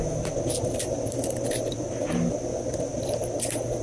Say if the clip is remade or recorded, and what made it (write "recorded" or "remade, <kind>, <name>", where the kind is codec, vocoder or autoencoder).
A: recorded